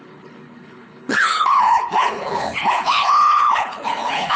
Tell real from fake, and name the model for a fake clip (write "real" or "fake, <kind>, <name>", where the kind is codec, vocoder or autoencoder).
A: fake, codec, HILCodec